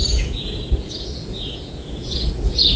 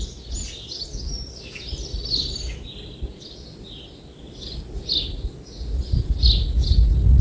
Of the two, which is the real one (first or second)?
second